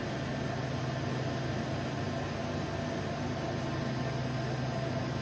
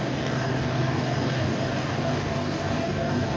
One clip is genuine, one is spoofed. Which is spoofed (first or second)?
second